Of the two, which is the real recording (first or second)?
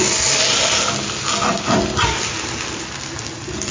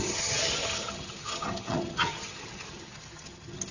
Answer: first